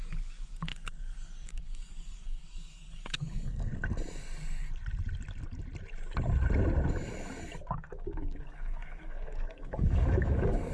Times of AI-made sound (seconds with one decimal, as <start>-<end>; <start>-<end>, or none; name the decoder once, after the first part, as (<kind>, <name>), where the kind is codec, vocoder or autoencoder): 0.0-3.7 (codec, DAC); 7.7-10.7